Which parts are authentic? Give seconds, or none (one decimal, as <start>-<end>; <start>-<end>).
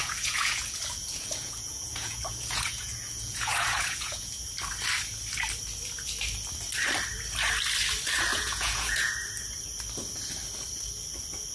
4.4-8.3; 9.1-11.5